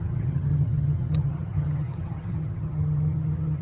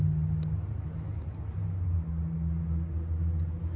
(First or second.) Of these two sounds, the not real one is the first